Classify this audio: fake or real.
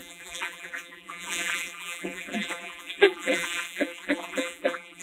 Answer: fake